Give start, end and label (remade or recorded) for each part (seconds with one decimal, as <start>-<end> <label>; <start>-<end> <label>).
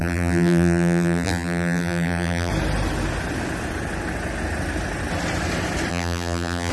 0.0-2.5 remade; 2.5-5.9 recorded; 5.9-6.7 remade